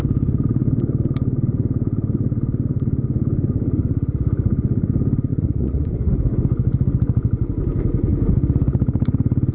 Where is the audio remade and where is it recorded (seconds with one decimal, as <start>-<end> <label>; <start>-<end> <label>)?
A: 0.0-5.3 recorded; 5.3-6.1 remade; 6.1-9.5 recorded